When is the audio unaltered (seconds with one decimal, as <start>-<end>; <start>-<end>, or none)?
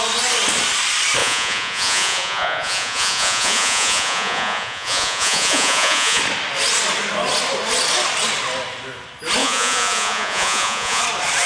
0.0-1.2; 6.2-9.4; 11.0-11.5